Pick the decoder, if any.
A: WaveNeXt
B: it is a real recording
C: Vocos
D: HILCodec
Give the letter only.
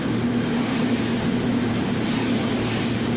B